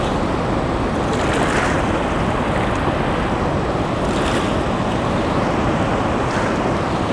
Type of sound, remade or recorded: recorded